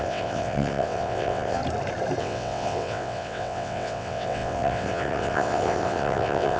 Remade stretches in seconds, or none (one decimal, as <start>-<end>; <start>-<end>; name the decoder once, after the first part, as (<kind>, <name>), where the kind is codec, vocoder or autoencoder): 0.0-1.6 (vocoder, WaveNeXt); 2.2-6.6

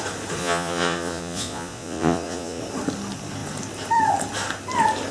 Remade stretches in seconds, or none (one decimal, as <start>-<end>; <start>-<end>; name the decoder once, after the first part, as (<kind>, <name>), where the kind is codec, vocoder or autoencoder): 0.4-2.6 (vocoder, Vocos)

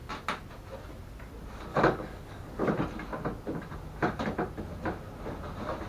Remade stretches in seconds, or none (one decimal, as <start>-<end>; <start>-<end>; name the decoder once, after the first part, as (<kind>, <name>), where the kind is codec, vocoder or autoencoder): 1.7-2.7 (codec, DAC)

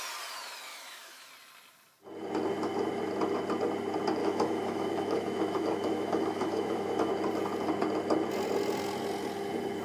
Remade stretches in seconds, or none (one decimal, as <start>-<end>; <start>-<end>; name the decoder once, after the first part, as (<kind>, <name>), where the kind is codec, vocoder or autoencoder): 0.7-1.3 (autoencoder, DAC-VAE); 4.2-7.1

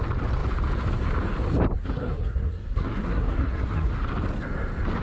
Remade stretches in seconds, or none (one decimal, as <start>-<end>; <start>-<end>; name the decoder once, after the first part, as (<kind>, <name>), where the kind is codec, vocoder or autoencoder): 1.8-3.9 (codec, SNAC)

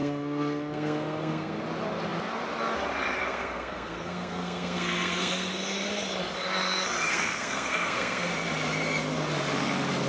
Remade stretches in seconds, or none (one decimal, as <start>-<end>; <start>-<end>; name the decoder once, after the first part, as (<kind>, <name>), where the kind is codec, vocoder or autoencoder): 0.0-1.6 (codec, SNAC); 3.2-5.5; 7.1-8.3